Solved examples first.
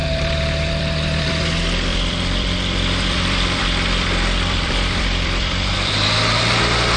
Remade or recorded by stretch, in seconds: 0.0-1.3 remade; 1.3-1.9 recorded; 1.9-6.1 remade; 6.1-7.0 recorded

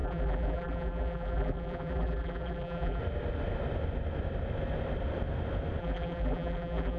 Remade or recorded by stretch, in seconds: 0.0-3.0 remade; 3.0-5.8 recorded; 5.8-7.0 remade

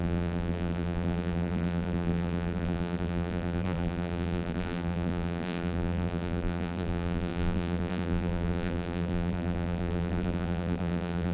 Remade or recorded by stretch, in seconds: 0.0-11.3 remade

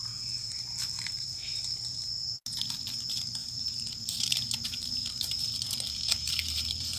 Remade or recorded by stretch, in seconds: 0.0-0.4 recorded; 0.4-1.5 remade; 1.5-3.4 recorded; 3.4-7.0 remade